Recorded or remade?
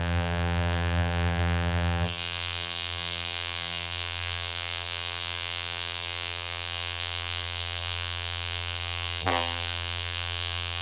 remade